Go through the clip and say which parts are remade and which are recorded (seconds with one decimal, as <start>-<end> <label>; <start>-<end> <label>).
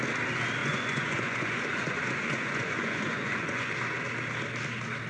0.0-0.6 recorded; 0.6-3.7 remade; 3.7-5.1 recorded